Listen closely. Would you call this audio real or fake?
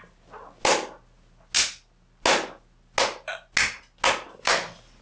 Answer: real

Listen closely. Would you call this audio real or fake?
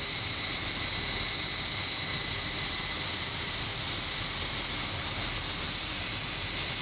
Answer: real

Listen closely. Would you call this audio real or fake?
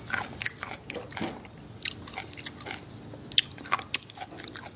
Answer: real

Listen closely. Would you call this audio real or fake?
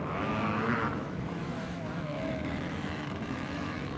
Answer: fake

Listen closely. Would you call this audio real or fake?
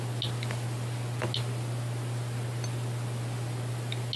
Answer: real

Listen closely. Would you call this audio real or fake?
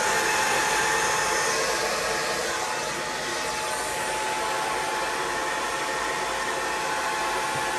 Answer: real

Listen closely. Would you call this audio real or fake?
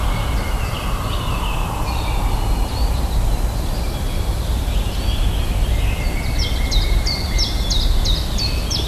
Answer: real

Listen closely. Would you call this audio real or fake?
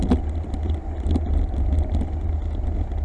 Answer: real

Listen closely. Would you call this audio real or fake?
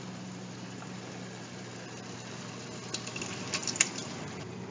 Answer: real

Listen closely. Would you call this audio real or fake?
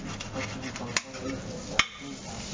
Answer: real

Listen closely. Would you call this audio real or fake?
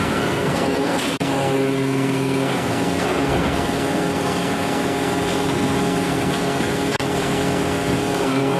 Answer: fake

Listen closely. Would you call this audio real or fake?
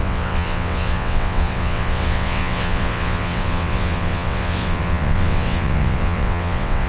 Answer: fake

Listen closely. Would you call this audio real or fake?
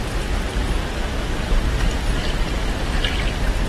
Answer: real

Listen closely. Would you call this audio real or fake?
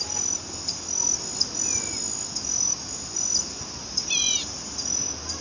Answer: real